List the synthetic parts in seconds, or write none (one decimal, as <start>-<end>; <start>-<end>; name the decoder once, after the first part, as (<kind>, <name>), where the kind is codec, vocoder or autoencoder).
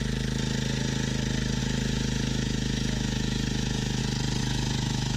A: 1.6-4.0 (autoencoder, DAC-VAE); 4.4-5.2